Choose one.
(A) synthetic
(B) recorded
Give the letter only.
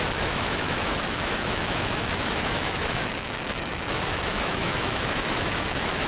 A